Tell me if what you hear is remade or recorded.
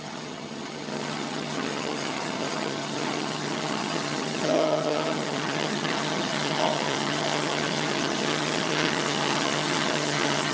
remade